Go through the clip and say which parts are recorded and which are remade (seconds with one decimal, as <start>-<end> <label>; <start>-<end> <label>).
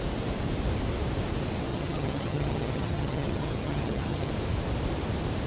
0.0-1.7 recorded; 1.7-4.3 remade; 4.3-5.5 recorded